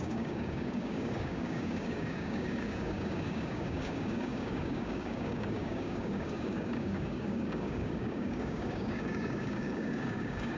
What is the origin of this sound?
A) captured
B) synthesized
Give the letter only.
B